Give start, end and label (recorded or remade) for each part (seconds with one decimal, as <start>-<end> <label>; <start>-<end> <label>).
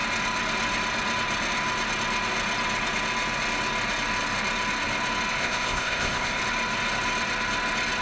0.0-5.4 recorded; 5.4-6.4 remade; 6.4-8.0 recorded